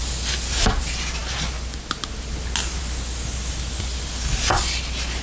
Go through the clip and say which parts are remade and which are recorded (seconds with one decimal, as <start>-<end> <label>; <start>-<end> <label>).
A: 0.0-5.2 recorded